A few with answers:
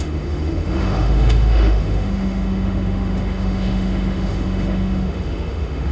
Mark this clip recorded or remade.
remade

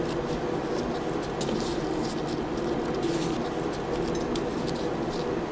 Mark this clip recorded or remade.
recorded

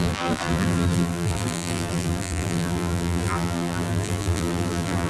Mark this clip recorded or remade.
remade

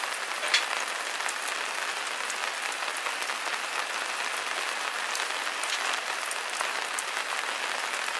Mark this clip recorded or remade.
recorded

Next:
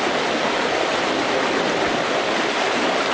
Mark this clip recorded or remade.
recorded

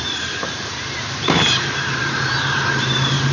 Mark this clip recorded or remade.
remade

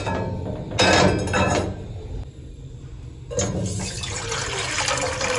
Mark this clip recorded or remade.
recorded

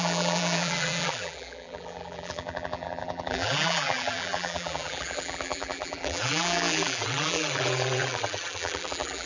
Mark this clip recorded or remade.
remade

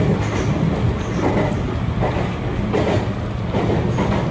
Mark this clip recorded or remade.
recorded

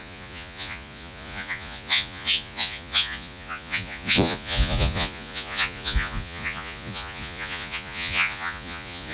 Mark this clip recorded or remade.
remade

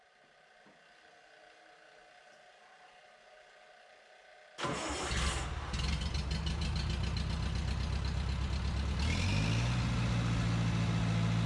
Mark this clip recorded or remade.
recorded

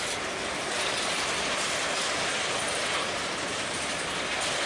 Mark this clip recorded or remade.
recorded